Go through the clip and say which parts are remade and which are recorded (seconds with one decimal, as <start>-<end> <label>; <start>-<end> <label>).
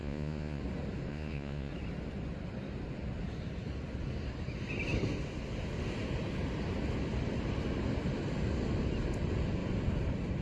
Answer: 0.0-0.6 remade; 0.6-1.1 recorded; 1.1-1.7 remade; 1.7-10.4 recorded